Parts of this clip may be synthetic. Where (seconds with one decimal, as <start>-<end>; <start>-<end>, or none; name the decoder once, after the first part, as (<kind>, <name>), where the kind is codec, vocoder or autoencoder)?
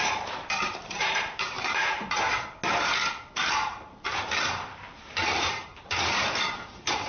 0.0-2.3 (vocoder, BigVGAN v2); 4.5-7.1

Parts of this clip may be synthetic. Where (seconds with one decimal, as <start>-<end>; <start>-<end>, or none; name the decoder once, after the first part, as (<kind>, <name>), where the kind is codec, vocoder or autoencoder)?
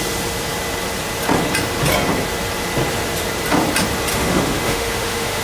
4.1-5.4 (autoencoder, DAC-VAE)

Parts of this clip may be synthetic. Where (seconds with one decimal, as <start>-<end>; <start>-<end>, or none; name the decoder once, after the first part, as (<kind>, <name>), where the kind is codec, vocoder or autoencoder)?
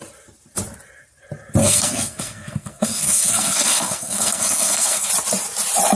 1.6-5.1 (codec, SNAC)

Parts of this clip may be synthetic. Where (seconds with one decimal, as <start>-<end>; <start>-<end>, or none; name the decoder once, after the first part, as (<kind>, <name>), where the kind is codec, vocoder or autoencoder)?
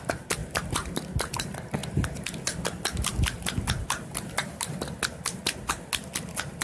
none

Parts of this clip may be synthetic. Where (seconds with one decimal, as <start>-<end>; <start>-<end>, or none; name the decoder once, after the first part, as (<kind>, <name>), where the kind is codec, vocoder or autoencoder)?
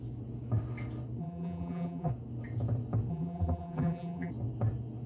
1.2-2.1 (vocoder, BigVGAN v2); 3.1-4.3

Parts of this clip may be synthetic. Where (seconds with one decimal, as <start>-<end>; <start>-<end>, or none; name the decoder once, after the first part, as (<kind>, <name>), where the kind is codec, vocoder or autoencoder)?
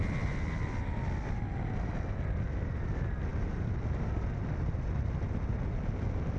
none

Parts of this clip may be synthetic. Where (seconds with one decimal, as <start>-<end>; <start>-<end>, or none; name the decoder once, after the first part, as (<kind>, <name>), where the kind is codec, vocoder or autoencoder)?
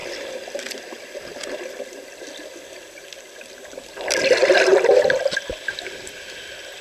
none